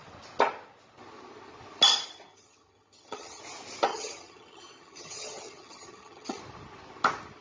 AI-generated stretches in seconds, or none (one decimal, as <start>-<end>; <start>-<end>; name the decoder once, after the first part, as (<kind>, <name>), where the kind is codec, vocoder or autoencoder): 2.3-3.4 (vocoder, HiFi-GAN); 3.9-6.4